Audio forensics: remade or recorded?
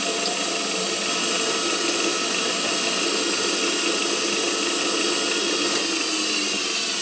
recorded